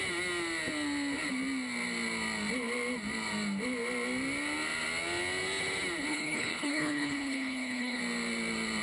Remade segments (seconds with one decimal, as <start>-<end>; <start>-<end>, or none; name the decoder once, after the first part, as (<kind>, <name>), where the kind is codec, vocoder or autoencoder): 6.1-8.0 (codec, HILCodec)